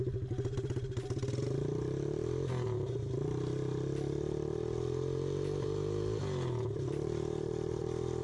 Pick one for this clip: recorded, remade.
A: recorded